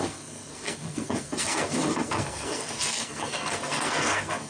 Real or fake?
fake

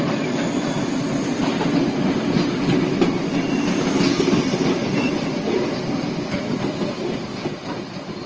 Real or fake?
real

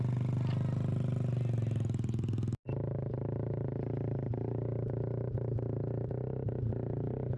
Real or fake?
real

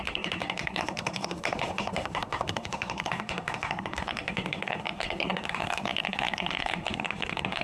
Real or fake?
fake